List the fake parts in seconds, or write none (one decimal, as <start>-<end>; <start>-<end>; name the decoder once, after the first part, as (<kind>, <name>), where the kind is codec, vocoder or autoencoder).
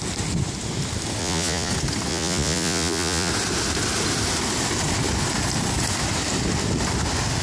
1.2-1.7 (vocoder, Vocos); 2.1-3.3